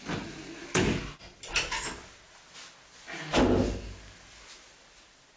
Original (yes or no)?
yes